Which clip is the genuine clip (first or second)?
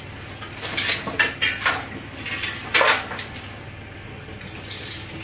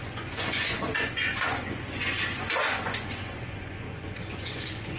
first